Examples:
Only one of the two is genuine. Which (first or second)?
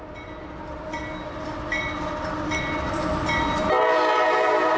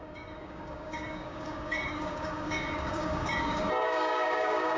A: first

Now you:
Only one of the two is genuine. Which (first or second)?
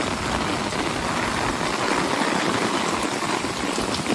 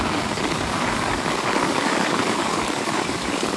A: first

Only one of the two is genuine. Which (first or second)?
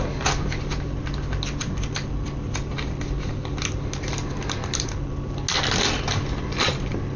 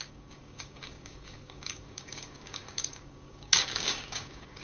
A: first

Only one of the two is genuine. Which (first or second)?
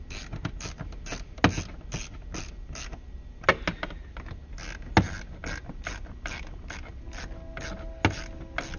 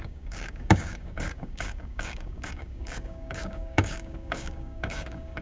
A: first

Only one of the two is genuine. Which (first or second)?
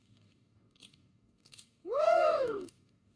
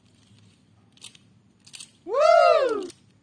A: second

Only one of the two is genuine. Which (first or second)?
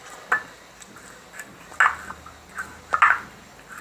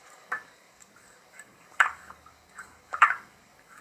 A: first